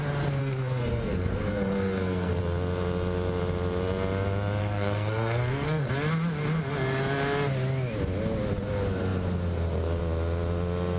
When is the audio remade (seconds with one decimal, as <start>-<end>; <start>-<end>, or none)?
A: 0.4-2.4; 4.6-5.9